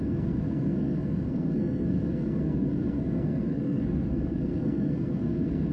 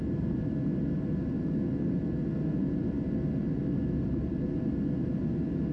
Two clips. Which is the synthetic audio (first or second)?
first